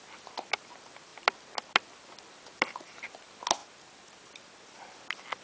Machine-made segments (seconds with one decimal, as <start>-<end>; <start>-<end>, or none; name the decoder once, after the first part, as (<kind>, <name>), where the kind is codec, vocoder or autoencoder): none